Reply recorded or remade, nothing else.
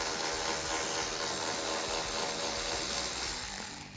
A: recorded